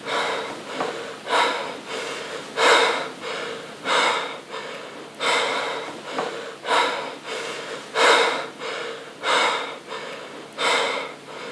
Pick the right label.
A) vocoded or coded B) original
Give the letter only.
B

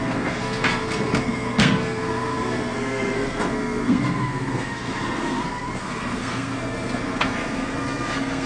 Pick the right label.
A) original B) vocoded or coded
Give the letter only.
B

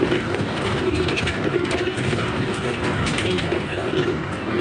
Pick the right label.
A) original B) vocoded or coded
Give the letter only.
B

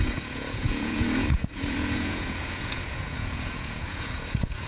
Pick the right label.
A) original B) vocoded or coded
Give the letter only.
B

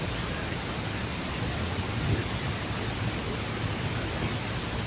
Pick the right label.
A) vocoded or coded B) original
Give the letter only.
B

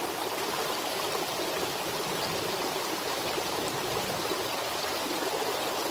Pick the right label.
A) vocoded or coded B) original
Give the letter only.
A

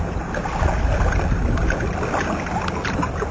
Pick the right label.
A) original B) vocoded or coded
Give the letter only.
A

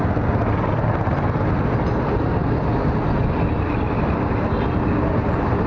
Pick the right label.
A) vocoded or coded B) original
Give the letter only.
B